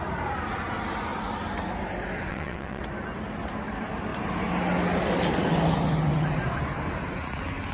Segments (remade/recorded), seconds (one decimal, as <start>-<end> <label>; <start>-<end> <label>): 0.0-2.3 recorded; 2.3-2.8 remade; 2.8-7.7 recorded

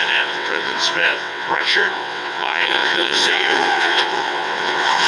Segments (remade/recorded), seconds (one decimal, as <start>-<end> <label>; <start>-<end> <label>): 0.0-5.1 remade

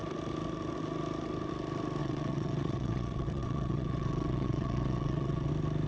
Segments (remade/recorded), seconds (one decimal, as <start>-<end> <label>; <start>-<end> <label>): 0.0-2.0 recorded; 2.0-5.5 remade; 5.5-5.9 recorded

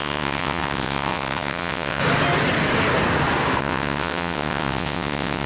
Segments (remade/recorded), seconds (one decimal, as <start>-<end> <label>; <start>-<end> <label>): 0.0-2.0 remade; 2.0-3.6 recorded; 3.6-5.5 remade

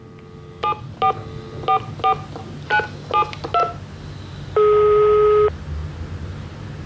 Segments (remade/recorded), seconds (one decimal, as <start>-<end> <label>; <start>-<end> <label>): 0.0-6.9 recorded

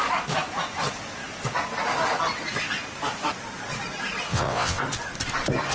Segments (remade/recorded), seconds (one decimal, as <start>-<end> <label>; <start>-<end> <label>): 0.0-4.3 recorded; 4.3-4.8 remade; 4.8-5.7 recorded